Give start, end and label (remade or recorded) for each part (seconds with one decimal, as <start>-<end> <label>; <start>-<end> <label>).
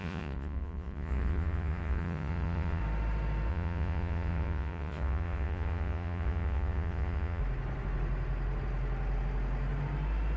0.0-2.8 remade; 2.8-3.5 recorded; 3.5-7.4 remade; 7.4-10.4 recorded